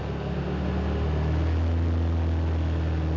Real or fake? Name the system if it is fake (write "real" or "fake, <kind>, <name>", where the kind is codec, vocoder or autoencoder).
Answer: real